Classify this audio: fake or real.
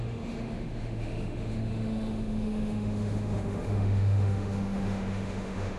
fake